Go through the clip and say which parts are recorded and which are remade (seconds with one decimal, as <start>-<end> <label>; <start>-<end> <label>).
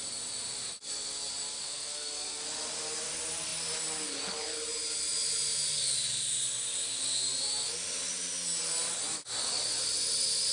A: 0.0-1.6 recorded; 1.6-2.4 remade; 2.4-10.5 recorded